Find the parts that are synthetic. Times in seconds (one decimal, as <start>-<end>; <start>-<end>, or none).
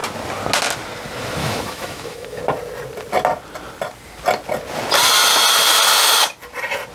1.4-2.4